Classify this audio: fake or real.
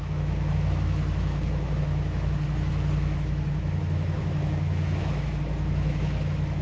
fake